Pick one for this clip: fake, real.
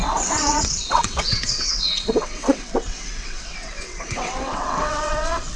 fake